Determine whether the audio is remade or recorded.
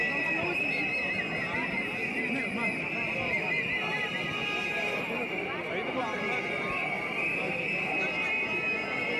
recorded